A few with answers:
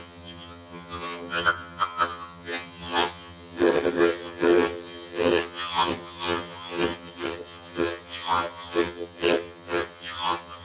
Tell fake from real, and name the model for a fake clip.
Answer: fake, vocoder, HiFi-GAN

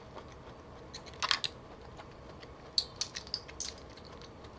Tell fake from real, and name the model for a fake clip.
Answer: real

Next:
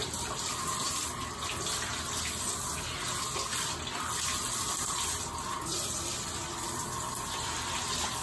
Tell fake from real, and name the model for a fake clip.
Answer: real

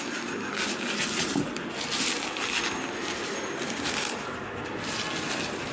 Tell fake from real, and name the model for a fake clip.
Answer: real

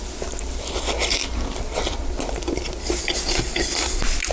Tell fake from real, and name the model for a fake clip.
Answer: real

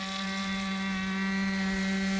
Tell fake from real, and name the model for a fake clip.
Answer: real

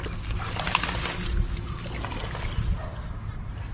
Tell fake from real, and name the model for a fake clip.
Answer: real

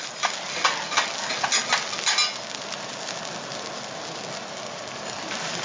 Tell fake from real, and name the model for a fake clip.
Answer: real